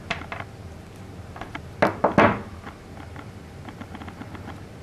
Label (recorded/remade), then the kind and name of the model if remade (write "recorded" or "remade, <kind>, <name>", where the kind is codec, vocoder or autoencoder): recorded